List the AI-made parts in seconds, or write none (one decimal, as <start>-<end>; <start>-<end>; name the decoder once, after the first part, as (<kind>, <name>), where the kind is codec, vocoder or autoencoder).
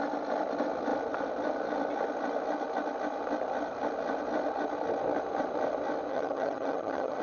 6.1-7.2 (vocoder, HiFi-GAN)